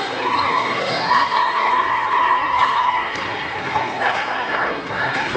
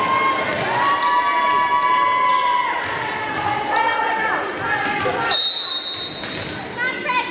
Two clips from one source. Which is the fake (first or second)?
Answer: first